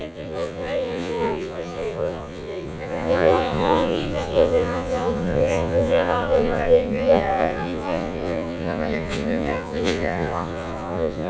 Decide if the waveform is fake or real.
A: fake